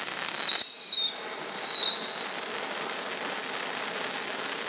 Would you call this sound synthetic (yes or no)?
no